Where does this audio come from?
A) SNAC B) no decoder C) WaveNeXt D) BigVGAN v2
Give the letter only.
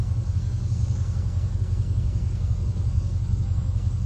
A